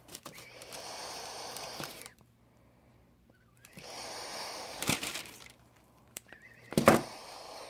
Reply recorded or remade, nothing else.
remade